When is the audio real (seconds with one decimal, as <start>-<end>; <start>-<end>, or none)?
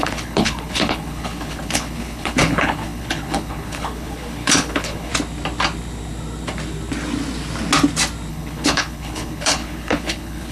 5.1-8.3